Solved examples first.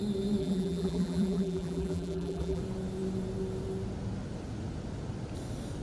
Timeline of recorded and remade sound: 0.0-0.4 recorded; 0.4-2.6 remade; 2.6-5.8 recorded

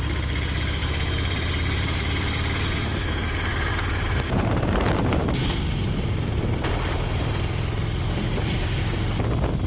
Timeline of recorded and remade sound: 0.0-0.8 recorded; 0.8-2.9 remade; 2.9-3.7 recorded; 3.7-8.8 remade; 8.8-9.7 recorded

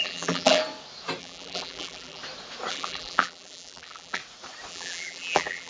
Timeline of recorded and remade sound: 0.0-0.6 remade; 0.6-1.2 recorded; 1.2-2.2 remade; 2.2-2.7 recorded; 2.7-4.2 remade; 4.2-4.7 recorded; 4.7-5.7 remade

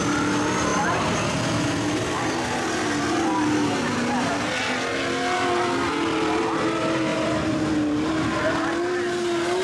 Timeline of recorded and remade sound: 0.0-9.6 recorded

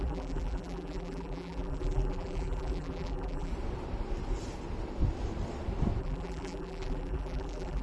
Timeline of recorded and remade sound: 0.0-3.5 remade; 3.5-6.0 recorded; 6.0-7.8 remade

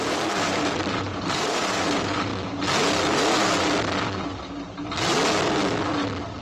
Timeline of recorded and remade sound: 0.0-2.3 remade; 2.3-6.4 recorded

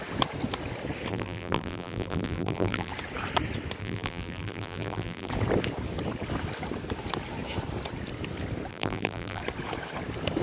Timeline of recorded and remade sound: 0.0-1.1 recorded; 1.1-2.9 remade; 2.9-3.8 recorded; 3.8-5.3 remade; 5.3-8.7 recorded; 8.7-9.4 remade; 9.4-10.4 recorded